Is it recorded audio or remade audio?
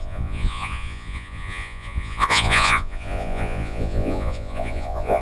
remade